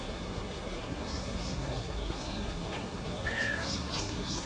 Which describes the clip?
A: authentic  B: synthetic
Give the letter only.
B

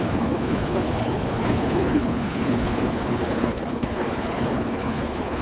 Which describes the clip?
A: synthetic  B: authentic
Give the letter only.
A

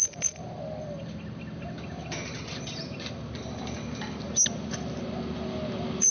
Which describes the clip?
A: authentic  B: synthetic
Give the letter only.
A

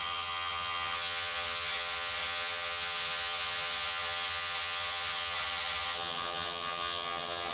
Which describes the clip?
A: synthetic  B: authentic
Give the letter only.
A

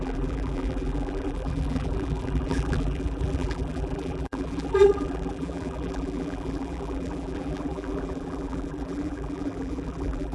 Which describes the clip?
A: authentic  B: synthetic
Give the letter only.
B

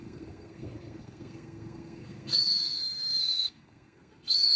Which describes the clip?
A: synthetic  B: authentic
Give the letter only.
A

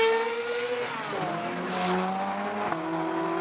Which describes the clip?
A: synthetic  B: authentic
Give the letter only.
B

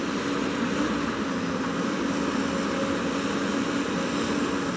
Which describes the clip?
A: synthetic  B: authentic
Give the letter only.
B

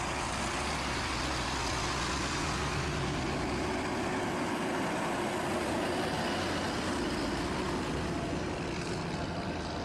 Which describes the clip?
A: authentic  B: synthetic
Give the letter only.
A